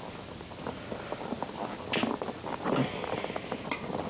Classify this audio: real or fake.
real